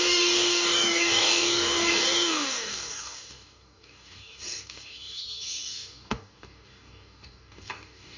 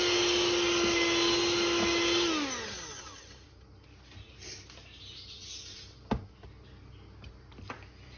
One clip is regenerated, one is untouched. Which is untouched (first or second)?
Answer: second